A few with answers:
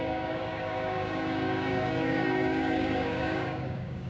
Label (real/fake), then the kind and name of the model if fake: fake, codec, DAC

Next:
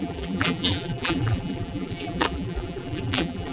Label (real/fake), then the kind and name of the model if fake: fake, vocoder, BigVGAN v2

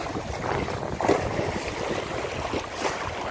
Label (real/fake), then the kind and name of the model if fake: real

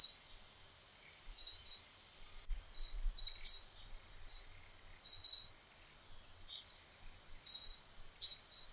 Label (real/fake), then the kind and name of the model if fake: real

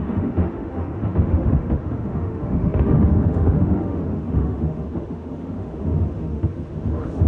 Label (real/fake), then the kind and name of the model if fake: fake, autoencoder, DAC-VAE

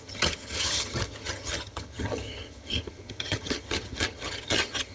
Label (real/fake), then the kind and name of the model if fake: fake, vocoder, HiFi-GAN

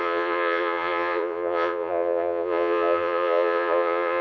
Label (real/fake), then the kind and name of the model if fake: fake, vocoder, Vocos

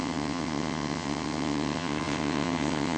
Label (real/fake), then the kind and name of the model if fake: fake, vocoder, WaveNeXt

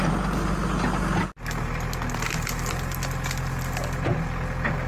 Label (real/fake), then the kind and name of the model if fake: real